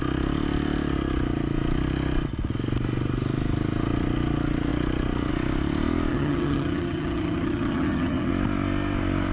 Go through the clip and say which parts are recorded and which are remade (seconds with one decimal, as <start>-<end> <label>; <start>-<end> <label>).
0.0-6.1 recorded; 6.1-8.3 remade; 8.3-9.3 recorded